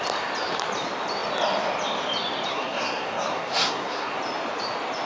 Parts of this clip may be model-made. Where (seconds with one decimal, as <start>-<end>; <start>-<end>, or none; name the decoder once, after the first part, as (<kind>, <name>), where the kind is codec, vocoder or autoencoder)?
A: 2.5-4.2 (codec, SNAC)